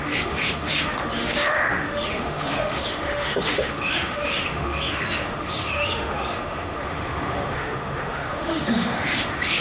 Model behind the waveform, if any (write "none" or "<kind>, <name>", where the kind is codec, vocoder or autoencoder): autoencoder, DAC-VAE